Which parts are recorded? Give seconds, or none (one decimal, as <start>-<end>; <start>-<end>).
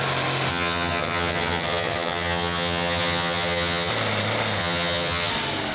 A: 0.0-0.5; 3.9-4.6; 5.3-5.7